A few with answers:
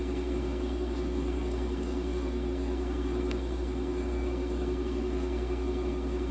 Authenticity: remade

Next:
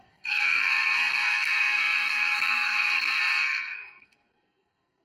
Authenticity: remade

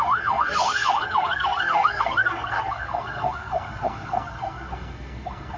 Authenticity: remade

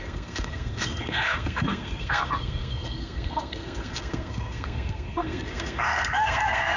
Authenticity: remade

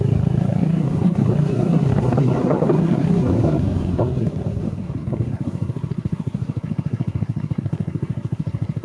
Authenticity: remade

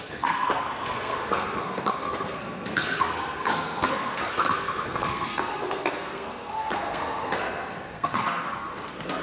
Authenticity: remade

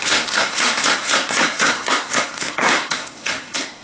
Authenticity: remade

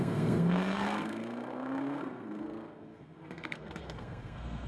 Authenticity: remade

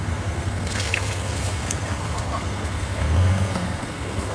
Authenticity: remade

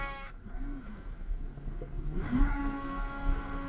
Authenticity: remade